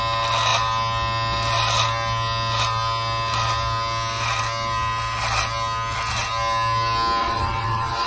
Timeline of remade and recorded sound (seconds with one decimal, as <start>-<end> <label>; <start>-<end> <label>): 0.0-7.2 recorded; 7.2-8.1 remade